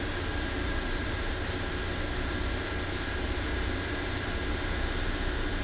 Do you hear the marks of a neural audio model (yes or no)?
no